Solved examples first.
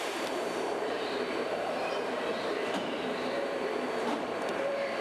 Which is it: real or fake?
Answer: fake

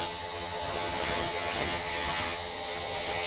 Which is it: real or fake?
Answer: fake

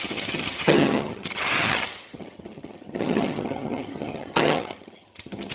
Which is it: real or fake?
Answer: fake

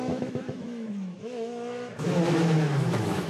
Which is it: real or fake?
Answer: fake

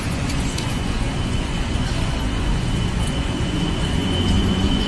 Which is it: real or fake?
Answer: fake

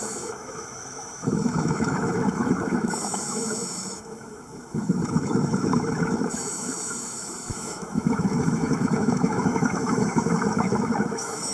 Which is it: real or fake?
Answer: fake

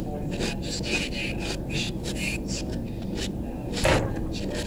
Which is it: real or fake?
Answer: real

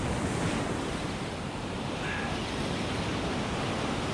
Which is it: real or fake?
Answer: real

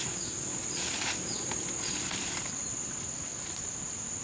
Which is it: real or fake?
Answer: real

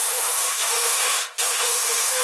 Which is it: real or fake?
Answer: fake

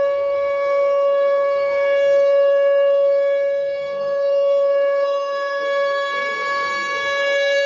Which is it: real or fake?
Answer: fake